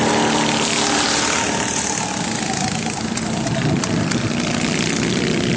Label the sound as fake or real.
real